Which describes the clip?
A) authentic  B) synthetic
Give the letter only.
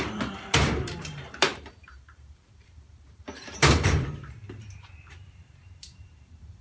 B